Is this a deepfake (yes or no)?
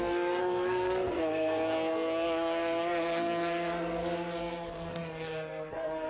yes